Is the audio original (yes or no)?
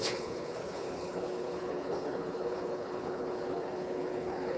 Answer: no